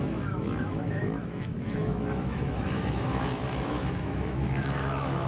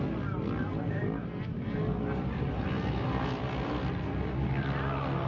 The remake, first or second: first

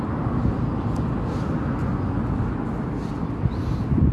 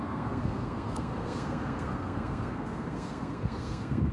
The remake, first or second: second